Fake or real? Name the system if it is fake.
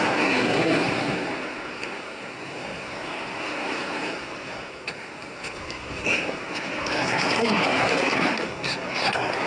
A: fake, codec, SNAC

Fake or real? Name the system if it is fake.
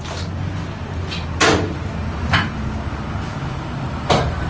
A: real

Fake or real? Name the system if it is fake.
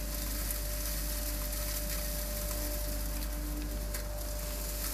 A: real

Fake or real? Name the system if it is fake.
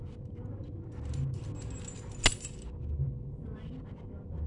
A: real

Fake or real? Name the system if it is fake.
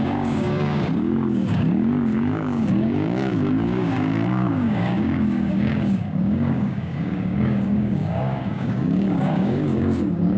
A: fake, codec, DAC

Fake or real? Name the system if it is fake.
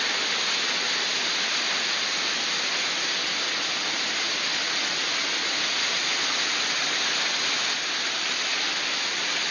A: real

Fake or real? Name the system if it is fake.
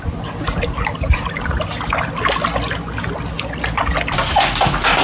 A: real